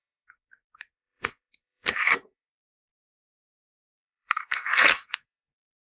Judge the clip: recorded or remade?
remade